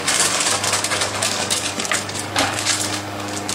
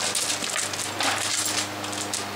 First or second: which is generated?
first